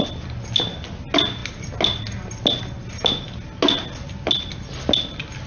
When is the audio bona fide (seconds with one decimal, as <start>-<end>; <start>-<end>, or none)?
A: 0.0-5.5